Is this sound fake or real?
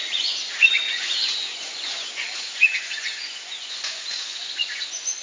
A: fake